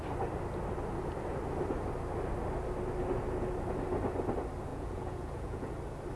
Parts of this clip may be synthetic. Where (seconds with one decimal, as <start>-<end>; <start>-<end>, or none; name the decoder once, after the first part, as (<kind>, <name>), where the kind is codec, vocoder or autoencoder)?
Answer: 4.7-5.7 (vocoder, Vocos)